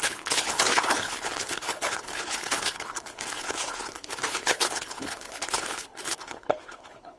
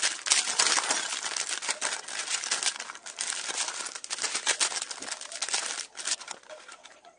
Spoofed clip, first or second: first